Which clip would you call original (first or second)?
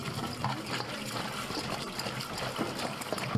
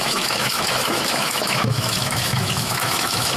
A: first